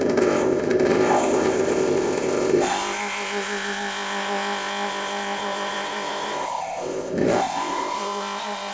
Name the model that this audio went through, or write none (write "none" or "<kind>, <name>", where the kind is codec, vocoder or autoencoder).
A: codec, ZipCodec